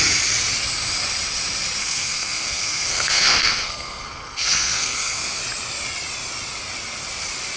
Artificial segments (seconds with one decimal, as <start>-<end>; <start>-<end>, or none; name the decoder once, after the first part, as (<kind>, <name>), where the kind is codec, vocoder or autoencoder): 1.8-5.4 (codec, SNAC)